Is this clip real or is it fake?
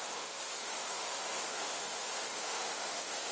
fake